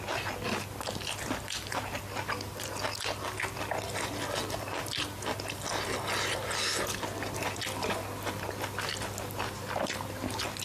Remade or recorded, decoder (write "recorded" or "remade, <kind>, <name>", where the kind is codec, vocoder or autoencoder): recorded